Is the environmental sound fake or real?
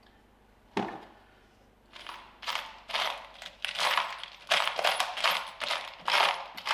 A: real